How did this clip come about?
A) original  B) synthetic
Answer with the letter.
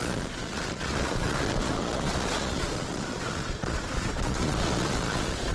B